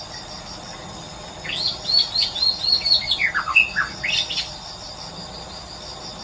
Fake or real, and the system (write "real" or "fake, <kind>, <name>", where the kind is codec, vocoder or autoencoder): real